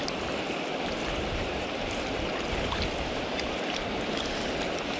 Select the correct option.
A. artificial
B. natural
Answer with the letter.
B